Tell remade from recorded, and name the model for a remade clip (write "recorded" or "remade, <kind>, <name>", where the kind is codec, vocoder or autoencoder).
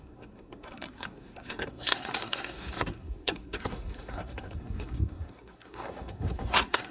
remade, codec, SNAC